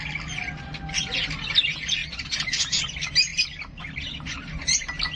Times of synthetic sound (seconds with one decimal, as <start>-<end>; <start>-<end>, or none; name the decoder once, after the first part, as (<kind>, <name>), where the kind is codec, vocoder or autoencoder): none